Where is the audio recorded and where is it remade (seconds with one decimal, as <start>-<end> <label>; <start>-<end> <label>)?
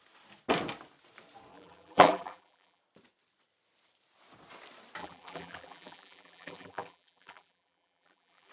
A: 0.0-1.5 recorded; 1.5-2.8 remade; 2.8-5.0 recorded; 5.0-8.5 remade